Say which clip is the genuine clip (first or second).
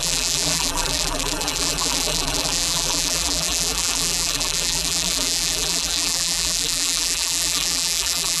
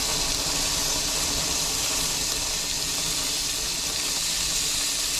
second